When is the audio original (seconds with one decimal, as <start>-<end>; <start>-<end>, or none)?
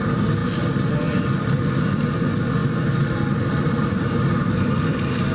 0.0-5.3